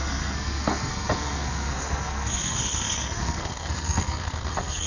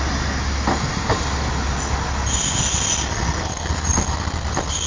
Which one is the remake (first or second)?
first